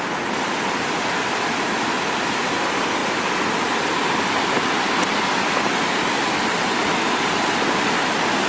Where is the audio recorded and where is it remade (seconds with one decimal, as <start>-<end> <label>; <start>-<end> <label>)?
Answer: 0.0-8.5 recorded